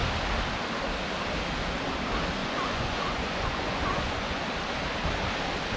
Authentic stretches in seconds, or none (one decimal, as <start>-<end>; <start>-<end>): 0.0-2.4; 4.4-5.8